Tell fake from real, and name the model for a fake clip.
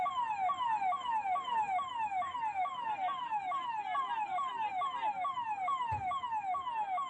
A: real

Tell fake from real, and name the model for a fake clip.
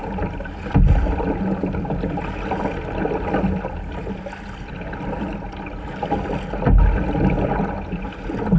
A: real